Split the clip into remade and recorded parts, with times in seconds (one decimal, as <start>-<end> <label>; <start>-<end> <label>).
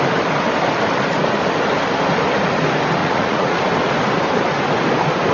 0.0-3.0 recorded; 3.0-3.6 remade; 3.6-5.3 recorded